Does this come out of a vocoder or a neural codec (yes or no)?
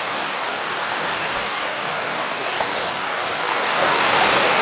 yes